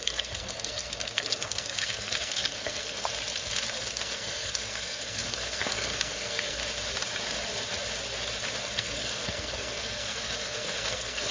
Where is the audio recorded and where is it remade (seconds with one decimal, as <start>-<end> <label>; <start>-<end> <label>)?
0.0-3.1 remade; 3.1-3.8 recorded; 3.8-6.6 remade; 6.6-8.6 recorded; 8.6-11.3 remade